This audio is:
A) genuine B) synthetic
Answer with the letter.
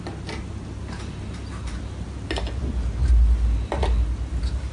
A